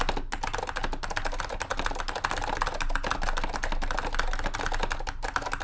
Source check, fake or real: real